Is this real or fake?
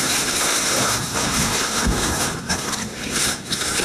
fake